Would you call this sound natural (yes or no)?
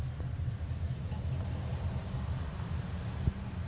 yes